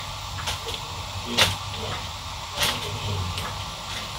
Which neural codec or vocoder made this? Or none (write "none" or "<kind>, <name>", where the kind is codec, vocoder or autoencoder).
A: none